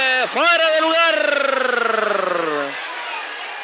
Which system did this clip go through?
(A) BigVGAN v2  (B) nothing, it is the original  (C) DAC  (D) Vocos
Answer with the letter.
B